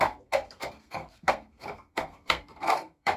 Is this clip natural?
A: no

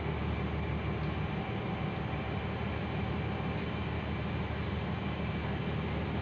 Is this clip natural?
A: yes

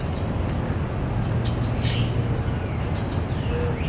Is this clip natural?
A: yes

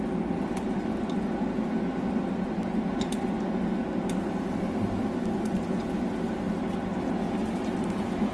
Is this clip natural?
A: yes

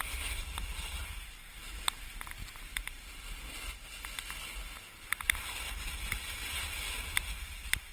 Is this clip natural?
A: yes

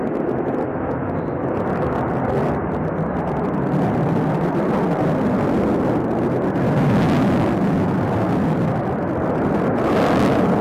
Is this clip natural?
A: yes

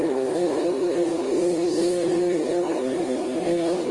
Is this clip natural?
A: no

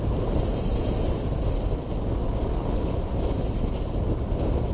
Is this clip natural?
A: yes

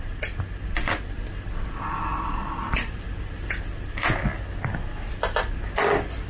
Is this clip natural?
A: yes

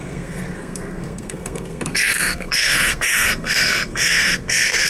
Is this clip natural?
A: no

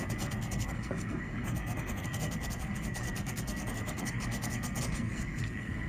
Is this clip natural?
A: no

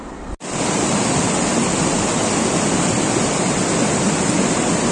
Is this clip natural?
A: yes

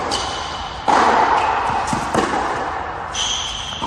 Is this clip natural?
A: yes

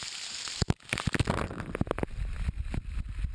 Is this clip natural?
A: yes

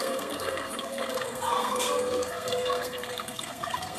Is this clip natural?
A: no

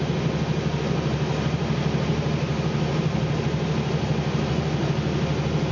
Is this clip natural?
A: yes